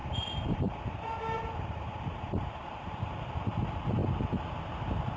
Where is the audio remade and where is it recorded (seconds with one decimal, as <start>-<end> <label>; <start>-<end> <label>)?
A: 0.0-3.1 remade; 3.1-5.2 recorded